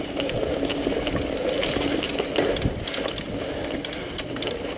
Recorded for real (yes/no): yes